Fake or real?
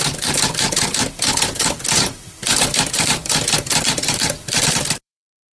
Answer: fake